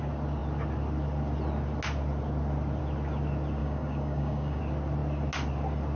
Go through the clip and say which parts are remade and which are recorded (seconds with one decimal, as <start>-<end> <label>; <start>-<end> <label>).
0.0-3.6 recorded; 3.6-4.6 remade; 4.6-6.0 recorded